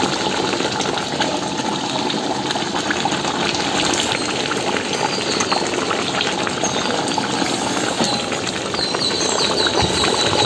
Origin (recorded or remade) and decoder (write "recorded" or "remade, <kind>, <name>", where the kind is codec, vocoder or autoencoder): recorded